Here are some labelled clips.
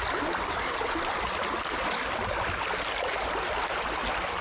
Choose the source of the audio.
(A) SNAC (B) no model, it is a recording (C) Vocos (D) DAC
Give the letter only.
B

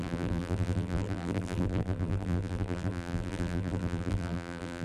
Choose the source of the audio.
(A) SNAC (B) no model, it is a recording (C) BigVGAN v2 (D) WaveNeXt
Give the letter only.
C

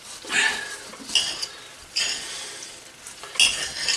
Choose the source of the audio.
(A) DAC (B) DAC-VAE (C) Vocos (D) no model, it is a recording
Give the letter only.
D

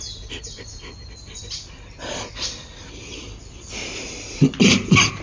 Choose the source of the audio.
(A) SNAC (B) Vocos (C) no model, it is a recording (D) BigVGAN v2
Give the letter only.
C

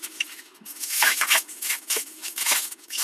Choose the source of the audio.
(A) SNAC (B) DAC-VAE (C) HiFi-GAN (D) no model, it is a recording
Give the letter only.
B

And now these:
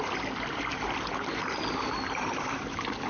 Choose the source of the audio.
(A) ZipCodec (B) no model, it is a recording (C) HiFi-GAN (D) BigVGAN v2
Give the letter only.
B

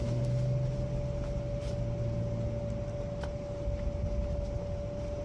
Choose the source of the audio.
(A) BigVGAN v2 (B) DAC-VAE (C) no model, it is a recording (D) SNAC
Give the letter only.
C